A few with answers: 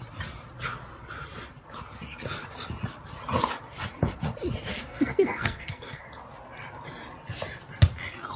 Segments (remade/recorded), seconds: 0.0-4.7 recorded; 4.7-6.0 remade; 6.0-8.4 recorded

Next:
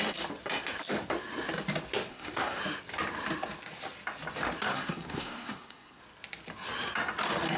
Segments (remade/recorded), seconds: 0.0-2.1 recorded; 2.1-2.6 remade; 2.6-4.7 recorded; 4.7-6.0 remade; 6.0-7.6 recorded

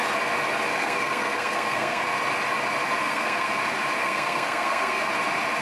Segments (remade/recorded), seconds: 0.0-0.7 recorded; 0.7-2.1 remade; 2.1-3.0 recorded; 3.0-3.6 remade; 3.6-4.0 recorded; 4.0-5.1 remade; 5.1-5.6 recorded

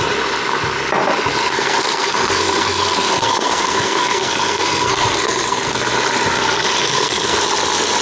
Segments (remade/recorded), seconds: 0.0-1.4 recorded; 1.4-5.9 remade; 5.9-6.8 recorded; 6.8-7.4 remade; 7.4-8.0 recorded